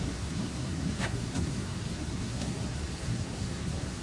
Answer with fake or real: fake